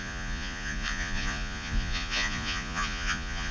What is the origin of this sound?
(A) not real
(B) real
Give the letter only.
A